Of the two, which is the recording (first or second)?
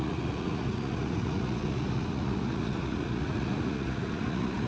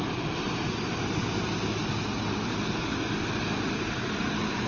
second